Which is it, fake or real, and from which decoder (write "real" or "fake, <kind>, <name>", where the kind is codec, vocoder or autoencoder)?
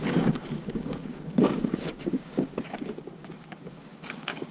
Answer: fake, codec, DAC